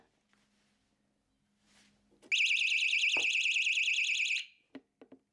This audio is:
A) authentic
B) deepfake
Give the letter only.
A